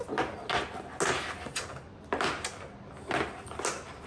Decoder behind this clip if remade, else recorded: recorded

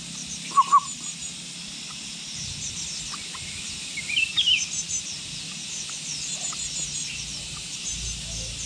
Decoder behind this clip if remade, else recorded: recorded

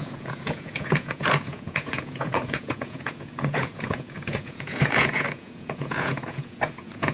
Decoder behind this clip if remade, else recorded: remade, vocoder, Vocos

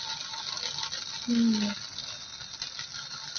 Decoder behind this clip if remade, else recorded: recorded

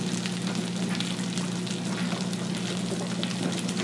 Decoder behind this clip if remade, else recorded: recorded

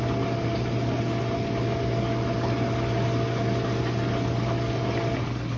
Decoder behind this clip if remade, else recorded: recorded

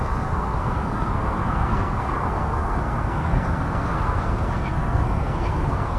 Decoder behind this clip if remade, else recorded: remade, codec, SNAC